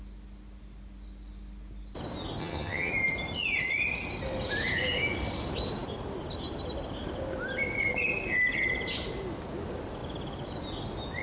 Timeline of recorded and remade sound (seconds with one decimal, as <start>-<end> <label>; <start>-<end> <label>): 0.0-2.4 recorded; 2.4-2.9 remade; 2.9-11.2 recorded